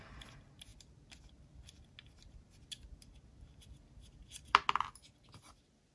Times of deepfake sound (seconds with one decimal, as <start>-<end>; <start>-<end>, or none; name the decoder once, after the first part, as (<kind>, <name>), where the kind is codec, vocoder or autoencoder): none